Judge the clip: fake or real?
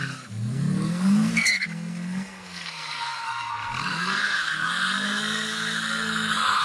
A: fake